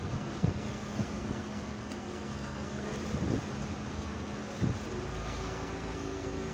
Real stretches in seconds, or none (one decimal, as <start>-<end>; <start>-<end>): 2.9-3.9; 4.4-5.1